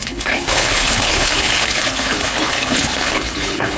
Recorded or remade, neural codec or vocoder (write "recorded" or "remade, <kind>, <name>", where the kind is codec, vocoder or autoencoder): remade, codec, HILCodec